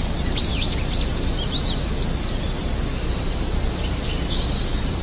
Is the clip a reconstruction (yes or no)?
no